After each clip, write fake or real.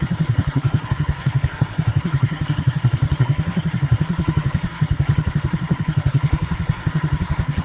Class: fake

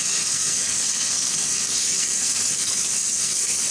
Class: fake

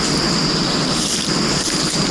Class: real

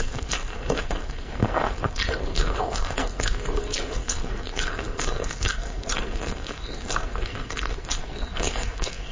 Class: fake